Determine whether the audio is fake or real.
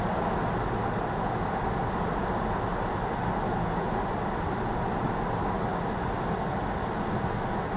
real